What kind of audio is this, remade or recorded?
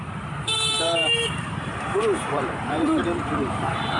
remade